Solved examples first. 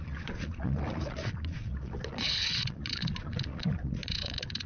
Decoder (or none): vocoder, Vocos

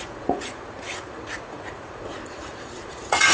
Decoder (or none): vocoder, Vocos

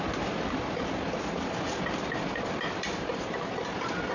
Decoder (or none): none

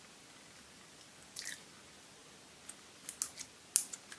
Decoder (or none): none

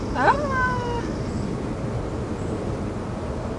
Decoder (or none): none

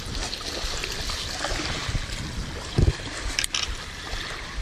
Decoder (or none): none